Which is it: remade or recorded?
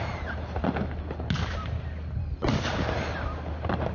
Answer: recorded